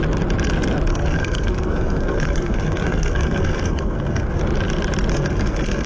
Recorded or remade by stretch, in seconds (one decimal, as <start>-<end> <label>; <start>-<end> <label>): 0.0-0.9 recorded; 0.9-4.4 remade; 4.4-5.1 recorded; 5.1-5.9 remade